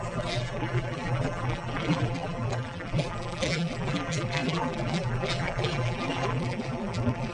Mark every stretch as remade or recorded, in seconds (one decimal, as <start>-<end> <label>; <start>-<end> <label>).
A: 0.0-7.3 remade